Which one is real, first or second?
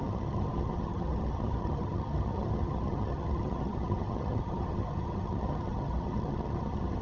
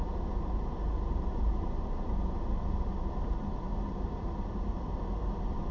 second